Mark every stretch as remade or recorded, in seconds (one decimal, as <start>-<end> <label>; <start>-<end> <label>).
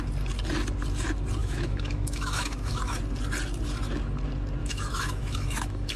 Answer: 0.0-1.4 recorded; 1.4-3.0 remade; 3.0-4.6 recorded; 4.6-6.0 remade